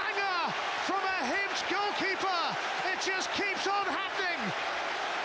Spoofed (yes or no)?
no